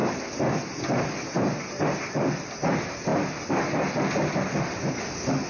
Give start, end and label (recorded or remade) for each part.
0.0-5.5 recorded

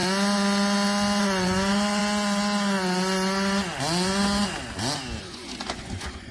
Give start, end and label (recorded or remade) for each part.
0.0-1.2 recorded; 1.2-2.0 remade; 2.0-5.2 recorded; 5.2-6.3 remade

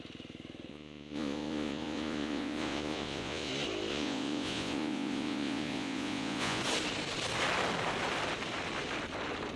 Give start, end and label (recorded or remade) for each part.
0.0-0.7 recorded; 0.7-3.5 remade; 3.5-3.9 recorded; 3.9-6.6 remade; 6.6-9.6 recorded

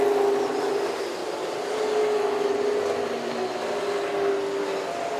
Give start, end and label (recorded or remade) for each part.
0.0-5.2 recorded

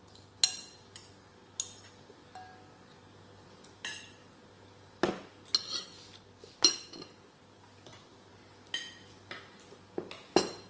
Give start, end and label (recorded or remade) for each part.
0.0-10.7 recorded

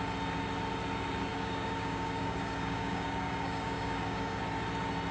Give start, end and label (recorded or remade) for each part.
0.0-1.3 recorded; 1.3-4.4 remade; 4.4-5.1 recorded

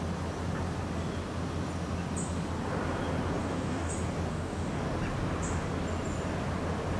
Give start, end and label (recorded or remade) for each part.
0.0-3.4 recorded; 3.4-3.9 remade; 3.9-4.3 recorded; 4.3-4.8 remade; 4.8-7.0 recorded

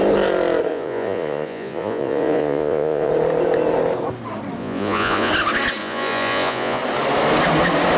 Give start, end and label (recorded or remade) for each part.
0.0-0.7 recorded; 0.7-3.1 remade; 3.1-4.6 recorded; 4.6-5.3 remade; 5.3-5.8 recorded; 5.8-6.8 remade; 6.8-8.0 recorded